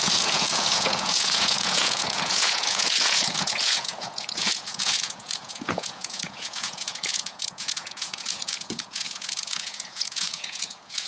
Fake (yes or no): yes